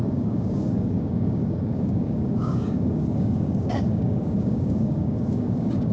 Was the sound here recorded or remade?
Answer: remade